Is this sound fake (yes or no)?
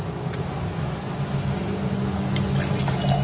no